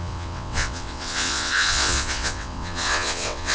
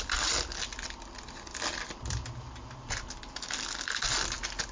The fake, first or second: first